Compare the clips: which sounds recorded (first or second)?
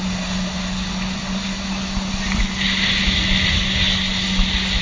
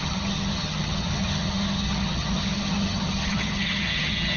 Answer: first